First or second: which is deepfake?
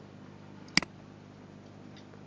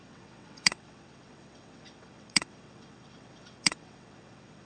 second